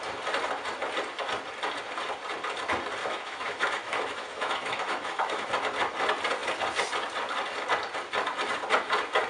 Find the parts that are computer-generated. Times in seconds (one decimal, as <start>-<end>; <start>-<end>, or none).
3.0-5.5